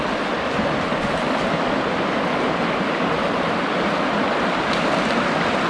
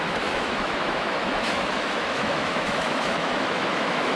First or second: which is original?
first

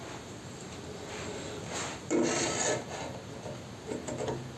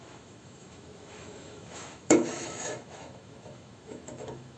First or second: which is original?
first